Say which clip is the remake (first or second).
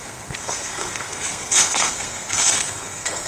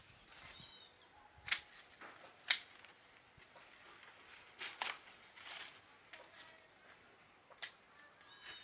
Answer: first